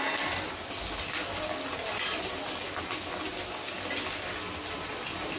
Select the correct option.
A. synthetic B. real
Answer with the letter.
B